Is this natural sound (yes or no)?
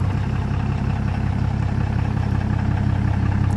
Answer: no